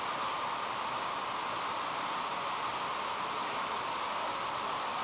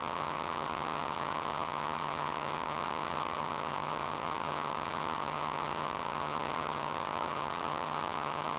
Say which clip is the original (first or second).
first